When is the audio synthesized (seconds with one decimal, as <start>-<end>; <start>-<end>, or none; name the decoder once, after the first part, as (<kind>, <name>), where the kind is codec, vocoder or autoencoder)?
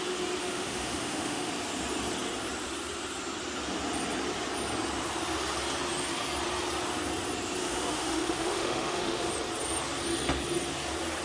0.4-1.5 (autoencoder, DAC-VAE); 7.6-9.3